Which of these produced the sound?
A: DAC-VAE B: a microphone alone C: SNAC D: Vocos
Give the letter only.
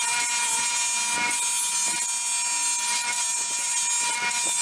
B